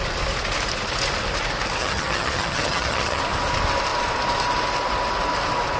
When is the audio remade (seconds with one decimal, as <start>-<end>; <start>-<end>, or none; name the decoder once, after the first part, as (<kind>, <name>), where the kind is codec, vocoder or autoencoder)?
1.8-3.2 (vocoder, HiFi-GAN)